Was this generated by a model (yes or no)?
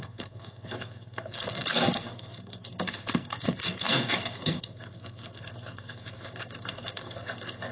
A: yes